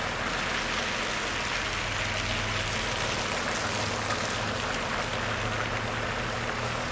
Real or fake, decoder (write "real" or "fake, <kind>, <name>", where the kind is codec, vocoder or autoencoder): real